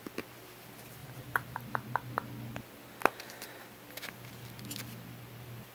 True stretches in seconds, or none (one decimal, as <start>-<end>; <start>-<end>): 1.0-4.1